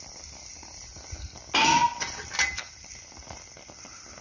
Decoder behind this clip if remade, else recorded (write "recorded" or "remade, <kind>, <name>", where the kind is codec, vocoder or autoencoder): recorded